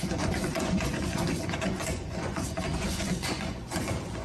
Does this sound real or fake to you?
fake